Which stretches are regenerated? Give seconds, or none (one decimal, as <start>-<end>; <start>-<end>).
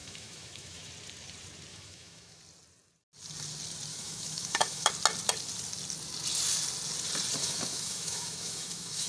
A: 0.0-0.9; 1.7-2.4; 3.9-4.9; 7.4-9.1